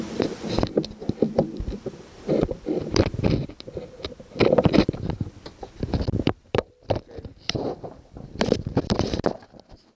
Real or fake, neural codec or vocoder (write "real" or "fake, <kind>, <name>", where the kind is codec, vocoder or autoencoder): fake, vocoder, BigVGAN v2